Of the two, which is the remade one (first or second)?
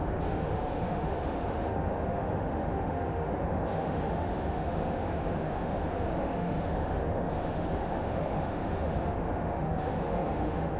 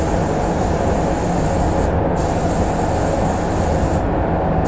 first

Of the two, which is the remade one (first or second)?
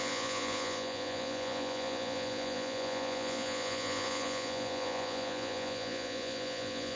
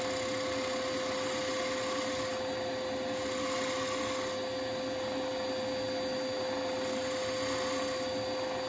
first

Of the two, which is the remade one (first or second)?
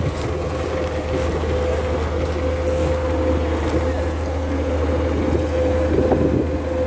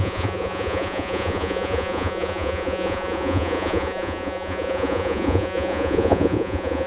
second